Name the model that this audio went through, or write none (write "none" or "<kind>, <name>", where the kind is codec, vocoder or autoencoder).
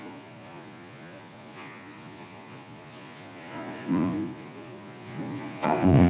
vocoder, Vocos